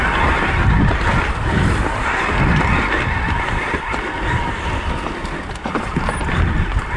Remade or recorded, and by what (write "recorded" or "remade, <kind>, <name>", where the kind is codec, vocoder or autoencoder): recorded